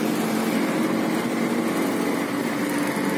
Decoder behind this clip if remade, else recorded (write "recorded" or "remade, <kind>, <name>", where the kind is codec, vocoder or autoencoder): recorded